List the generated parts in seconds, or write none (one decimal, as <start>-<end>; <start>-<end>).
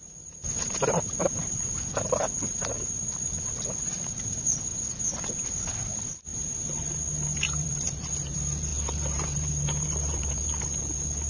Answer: 0.0-4.7; 5.6-6.3; 7.6-11.3